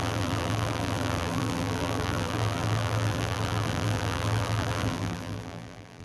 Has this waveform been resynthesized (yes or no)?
yes